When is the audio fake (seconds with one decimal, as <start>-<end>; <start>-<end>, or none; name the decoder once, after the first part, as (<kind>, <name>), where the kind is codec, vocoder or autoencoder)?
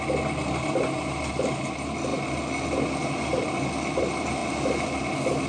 none